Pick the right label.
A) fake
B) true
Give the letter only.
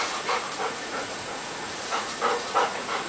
A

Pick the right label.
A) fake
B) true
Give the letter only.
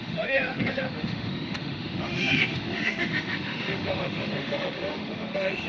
A